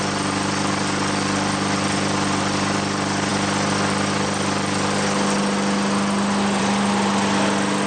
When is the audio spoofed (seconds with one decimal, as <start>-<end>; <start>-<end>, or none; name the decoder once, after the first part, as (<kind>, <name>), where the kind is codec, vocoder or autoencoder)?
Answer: none